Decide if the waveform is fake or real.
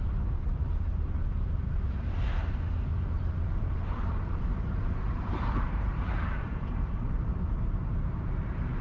fake